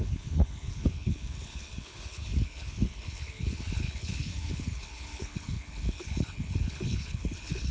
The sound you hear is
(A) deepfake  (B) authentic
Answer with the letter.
A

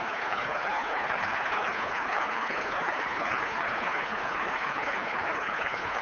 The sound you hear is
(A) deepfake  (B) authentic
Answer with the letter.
A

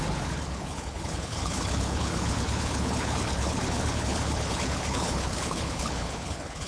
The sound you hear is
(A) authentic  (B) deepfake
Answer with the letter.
B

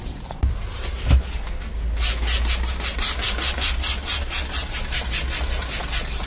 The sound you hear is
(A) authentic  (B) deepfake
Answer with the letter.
A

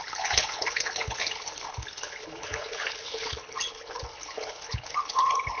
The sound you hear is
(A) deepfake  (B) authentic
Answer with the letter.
A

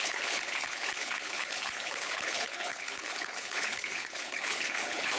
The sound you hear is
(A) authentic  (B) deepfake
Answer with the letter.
B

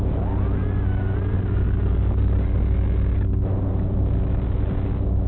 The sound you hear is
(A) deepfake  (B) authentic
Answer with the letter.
B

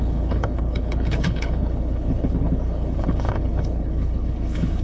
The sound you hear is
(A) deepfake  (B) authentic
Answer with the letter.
A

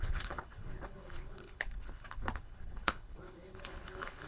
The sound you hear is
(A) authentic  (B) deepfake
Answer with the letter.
B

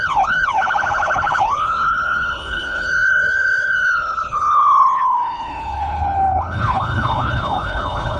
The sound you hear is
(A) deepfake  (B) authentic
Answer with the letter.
A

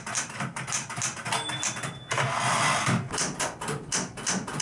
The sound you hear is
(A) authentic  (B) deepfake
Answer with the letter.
A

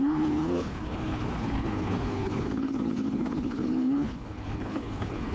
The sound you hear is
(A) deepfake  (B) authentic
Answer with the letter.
A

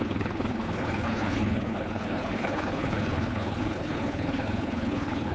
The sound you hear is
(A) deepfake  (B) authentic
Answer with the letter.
A